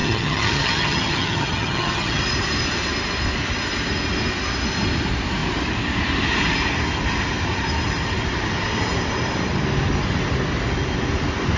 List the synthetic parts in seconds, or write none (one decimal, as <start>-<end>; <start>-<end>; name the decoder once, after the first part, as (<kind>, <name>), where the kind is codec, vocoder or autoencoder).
0.0-2.2 (vocoder, HiFi-GAN)